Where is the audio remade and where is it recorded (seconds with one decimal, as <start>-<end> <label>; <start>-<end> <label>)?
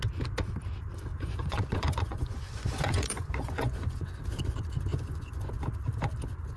0.0-1.1 recorded; 1.1-4.2 remade; 4.2-4.9 recorded; 4.9-5.5 remade; 5.5-6.6 recorded